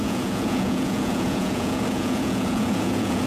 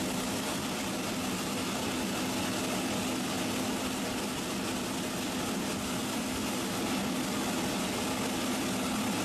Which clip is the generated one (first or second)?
first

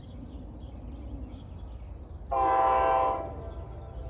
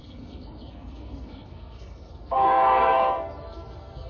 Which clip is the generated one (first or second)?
second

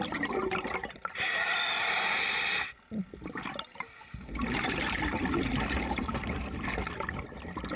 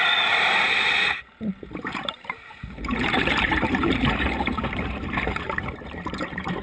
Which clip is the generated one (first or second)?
second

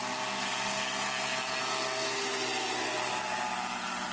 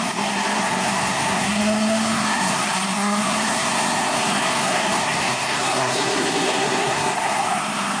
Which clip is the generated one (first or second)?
second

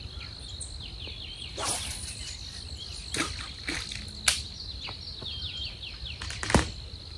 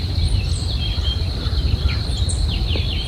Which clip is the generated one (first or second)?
second